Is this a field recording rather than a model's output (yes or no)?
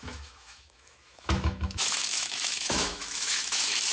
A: no